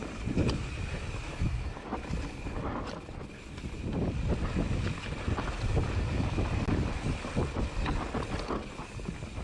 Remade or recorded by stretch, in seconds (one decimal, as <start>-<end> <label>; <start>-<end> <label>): 0.0-9.4 recorded